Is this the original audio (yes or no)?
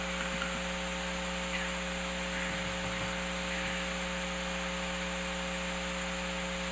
yes